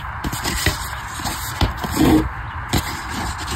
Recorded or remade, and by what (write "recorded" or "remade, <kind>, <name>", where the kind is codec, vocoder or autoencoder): recorded